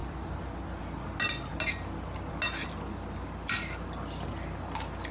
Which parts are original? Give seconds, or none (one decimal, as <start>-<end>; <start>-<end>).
0.0-5.1